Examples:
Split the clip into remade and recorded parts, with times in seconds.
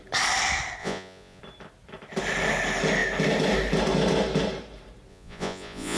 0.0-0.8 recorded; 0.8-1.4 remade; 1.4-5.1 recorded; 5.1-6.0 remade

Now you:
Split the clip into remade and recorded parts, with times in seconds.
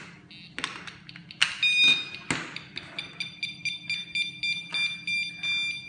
0.0-5.9 recorded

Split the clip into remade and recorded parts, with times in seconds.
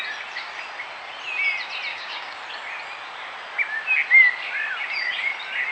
0.0-1.9 recorded; 1.9-2.4 remade; 2.4-5.7 recorded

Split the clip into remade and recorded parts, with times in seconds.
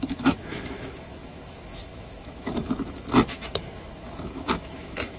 0.0-5.2 remade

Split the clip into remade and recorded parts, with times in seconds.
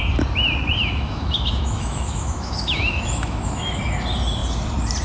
0.0-0.8 recorded; 0.8-3.8 remade; 3.8-5.0 recorded